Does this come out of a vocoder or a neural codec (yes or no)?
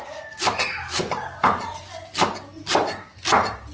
no